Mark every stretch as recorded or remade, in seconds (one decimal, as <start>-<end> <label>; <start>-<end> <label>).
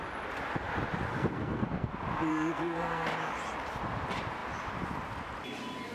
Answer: 0.0-1.1 recorded; 1.1-1.9 remade; 1.9-2.3 recorded; 2.3-3.1 remade; 3.1-5.9 recorded